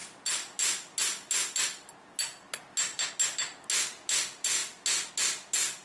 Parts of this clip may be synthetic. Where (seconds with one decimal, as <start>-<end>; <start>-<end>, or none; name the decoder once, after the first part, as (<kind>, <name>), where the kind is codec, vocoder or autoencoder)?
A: none